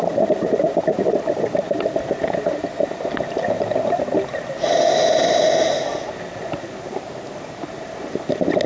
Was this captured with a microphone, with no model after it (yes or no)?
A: yes